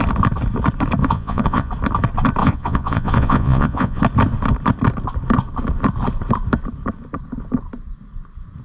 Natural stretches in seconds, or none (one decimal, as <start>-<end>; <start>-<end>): 0.0-1.0; 1.7-2.4; 4.0-8.6